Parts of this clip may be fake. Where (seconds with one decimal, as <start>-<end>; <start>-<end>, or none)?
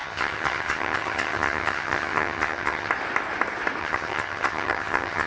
0.0-2.9; 3.8-5.3